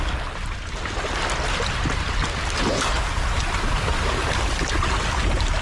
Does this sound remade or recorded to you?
recorded